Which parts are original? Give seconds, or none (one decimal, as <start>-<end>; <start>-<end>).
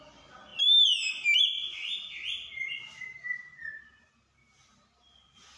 0.0-5.6